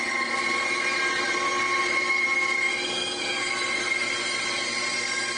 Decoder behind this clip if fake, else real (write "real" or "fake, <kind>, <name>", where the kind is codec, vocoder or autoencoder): real